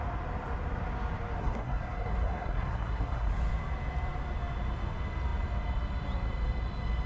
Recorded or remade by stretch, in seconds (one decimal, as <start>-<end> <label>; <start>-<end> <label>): 0.0-1.4 recorded; 1.4-3.3 remade; 3.3-7.1 recorded